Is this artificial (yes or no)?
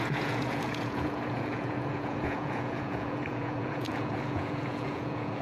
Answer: yes